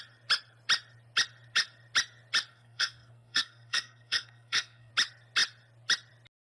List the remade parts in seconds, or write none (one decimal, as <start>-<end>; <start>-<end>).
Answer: 2.5-4.9